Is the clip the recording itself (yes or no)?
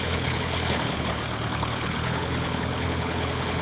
no